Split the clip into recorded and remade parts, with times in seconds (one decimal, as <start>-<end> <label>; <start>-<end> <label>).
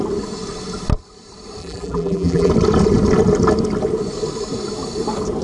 0.0-1.6 recorded; 1.6-2.5 remade; 2.5-5.4 recorded